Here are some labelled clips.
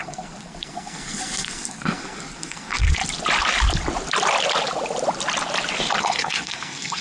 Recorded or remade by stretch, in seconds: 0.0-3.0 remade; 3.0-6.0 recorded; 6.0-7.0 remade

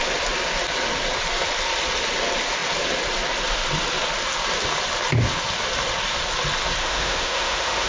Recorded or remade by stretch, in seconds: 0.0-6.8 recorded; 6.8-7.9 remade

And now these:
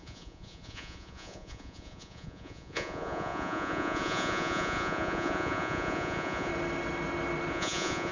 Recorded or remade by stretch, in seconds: 0.0-6.5 remade; 6.5-7.5 recorded; 7.5-8.1 remade

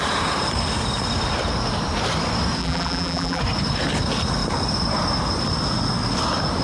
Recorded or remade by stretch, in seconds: 0.0-2.6 recorded; 2.6-3.4 remade; 3.4-6.6 recorded

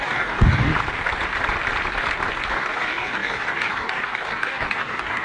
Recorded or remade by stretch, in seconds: 0.0-0.7 remade; 0.7-2.5 recorded; 2.5-5.2 remade

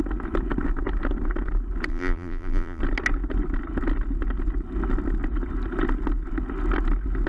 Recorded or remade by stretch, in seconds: 0.0-1.9 recorded; 1.9-2.8 remade; 2.8-7.3 recorded

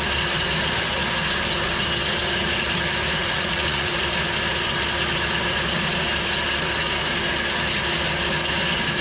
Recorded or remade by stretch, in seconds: 0.0-3.2 recorded; 3.2-3.9 remade; 3.9-9.0 recorded

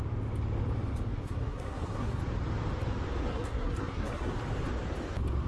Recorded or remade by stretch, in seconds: 0.0-1.2 recorded; 1.2-2.2 remade; 2.2-3.2 recorded; 3.2-4.3 remade; 4.3-5.5 recorded